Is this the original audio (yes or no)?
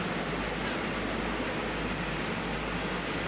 yes